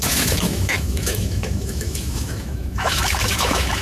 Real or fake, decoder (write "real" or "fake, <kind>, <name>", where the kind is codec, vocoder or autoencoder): fake, autoencoder, DAC-VAE